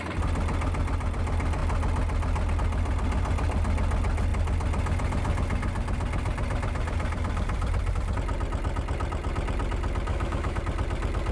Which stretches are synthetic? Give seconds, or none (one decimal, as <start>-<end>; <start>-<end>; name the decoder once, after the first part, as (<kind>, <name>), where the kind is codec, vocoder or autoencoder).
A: 10.1-10.6 (autoencoder, DAC-VAE)